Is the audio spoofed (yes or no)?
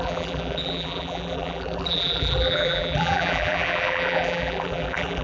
yes